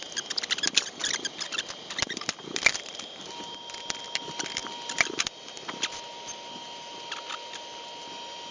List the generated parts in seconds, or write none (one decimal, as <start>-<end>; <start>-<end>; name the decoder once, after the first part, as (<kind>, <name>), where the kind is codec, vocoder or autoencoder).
1.0-3.8 (vocoder, BigVGAN v2); 4.6-5.2